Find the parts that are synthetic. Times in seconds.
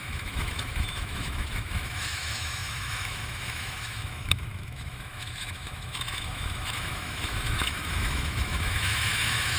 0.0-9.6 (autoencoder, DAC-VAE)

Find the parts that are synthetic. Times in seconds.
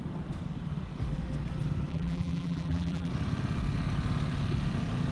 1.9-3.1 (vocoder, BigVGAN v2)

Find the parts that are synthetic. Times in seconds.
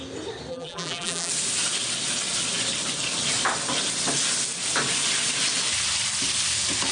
0.5-1.3 (vocoder, BigVGAN v2)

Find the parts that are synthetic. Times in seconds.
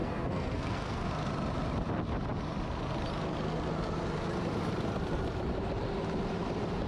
0.0-1.1 (codec, SNAC)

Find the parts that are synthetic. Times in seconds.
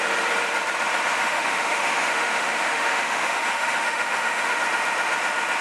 1.2-4.6 (autoencoder, DAC-VAE)